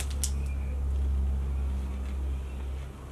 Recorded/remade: recorded